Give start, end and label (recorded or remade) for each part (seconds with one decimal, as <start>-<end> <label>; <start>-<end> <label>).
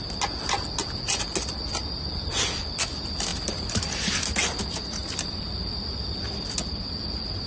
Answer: 0.0-3.3 recorded; 3.3-4.6 remade; 4.6-5.0 recorded; 5.0-7.5 remade